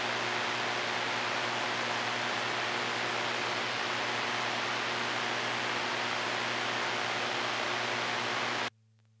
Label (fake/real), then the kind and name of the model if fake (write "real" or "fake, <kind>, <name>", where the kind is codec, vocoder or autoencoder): real